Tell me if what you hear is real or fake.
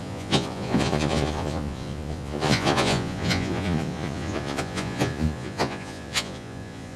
fake